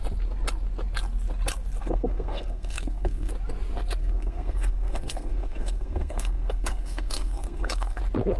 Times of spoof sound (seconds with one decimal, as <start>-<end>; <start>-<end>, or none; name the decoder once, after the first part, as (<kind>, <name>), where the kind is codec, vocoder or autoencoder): 1.8-3.3 (codec, SNAC); 4.0-8.0